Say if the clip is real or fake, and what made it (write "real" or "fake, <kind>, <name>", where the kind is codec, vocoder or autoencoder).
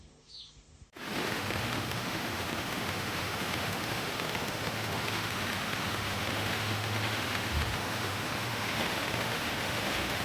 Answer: fake, autoencoder, DAC-VAE